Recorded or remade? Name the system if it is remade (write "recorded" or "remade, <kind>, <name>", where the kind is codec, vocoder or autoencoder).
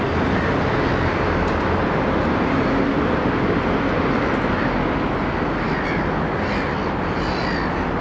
recorded